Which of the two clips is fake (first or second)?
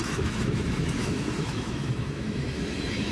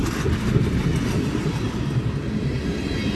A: first